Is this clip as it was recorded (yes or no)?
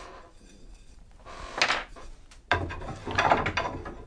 yes